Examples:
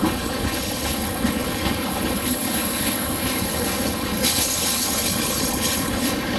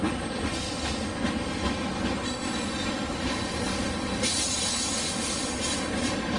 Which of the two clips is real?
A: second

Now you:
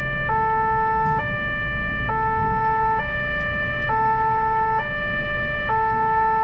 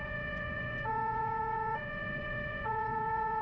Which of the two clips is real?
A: first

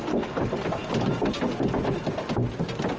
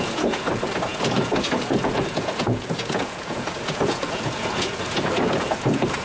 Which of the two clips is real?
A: first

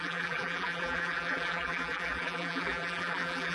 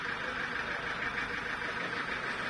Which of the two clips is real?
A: second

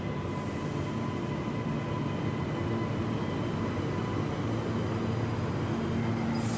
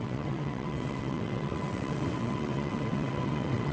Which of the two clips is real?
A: first